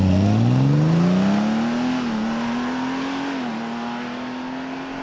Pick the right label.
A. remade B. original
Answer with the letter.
B